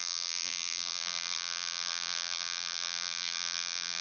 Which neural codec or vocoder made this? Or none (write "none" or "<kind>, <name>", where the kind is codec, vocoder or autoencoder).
vocoder, BigVGAN v2